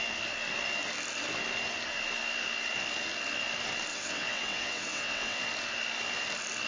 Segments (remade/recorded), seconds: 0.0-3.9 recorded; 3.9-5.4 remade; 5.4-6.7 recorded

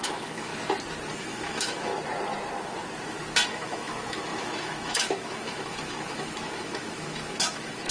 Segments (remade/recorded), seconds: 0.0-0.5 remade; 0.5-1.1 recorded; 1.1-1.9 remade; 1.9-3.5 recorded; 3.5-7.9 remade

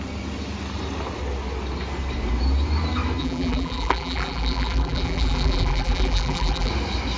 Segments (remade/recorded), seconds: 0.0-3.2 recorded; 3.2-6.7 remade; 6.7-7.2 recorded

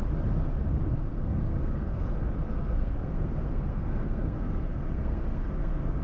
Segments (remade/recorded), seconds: 0.0-1.1 recorded; 1.1-2.1 remade; 2.1-2.5 recorded; 2.5-6.0 remade

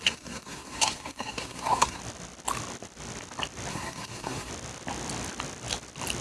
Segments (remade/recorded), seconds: 0.0-2.0 remade; 2.0-3.7 recorded; 3.7-4.5 remade; 4.5-6.2 recorded

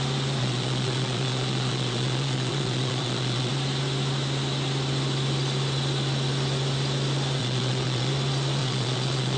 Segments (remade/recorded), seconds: 0.0-0.4 recorded; 0.4-3.5 remade; 3.5-7.4 recorded; 7.4-8.1 remade; 8.1-8.6 recorded; 8.6-9.4 remade